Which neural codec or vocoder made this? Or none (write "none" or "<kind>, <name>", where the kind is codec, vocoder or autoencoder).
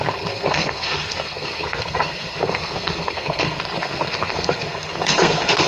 codec, SNAC